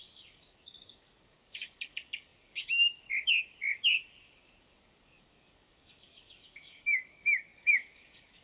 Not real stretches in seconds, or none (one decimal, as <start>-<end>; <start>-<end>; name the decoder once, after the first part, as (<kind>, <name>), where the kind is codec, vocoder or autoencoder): 0.0-8.4 (codec, DAC)